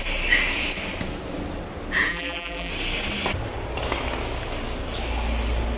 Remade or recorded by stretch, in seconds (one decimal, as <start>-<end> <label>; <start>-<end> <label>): 0.0-2.1 recorded; 2.1-2.7 remade; 2.7-5.8 recorded